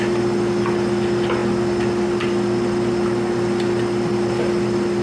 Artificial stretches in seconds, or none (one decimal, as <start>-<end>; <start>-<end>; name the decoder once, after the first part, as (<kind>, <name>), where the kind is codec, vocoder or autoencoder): none